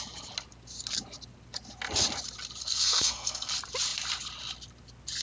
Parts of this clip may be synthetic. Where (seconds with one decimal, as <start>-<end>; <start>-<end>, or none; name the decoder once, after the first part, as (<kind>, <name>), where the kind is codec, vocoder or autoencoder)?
2.6-3.5 (codec, SNAC)